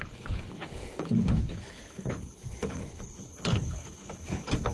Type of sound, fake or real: fake